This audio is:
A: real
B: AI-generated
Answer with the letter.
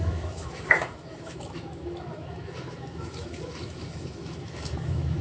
B